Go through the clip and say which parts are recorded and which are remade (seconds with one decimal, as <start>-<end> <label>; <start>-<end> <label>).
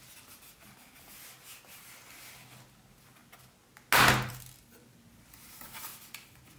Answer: 0.0-6.6 recorded